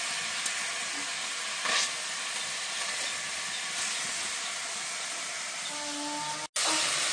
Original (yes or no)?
yes